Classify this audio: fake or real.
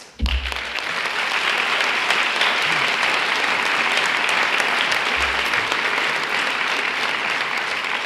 real